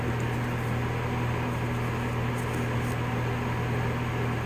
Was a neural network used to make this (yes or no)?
no